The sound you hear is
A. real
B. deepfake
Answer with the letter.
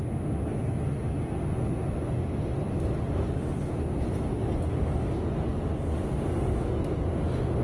A